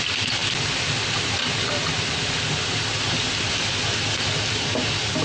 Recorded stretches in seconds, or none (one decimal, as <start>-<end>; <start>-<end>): 0.0-5.2